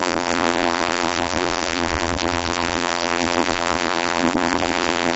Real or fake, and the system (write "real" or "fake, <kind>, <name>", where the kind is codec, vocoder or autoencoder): fake, vocoder, BigVGAN v2